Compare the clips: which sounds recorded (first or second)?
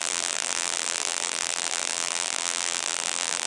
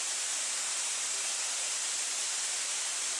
second